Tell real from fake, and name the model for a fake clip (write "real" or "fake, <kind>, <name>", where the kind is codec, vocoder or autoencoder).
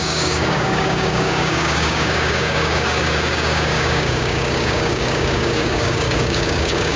fake, codec, DAC